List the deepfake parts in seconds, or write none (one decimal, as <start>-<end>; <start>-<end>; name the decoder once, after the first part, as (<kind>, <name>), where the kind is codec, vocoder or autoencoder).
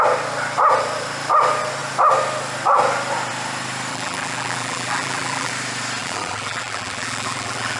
3.9-5.5 (vocoder, BigVGAN v2); 6.0-7.8